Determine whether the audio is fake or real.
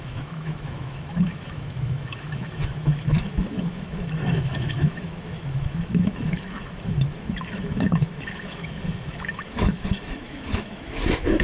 fake